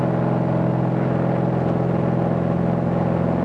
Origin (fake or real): real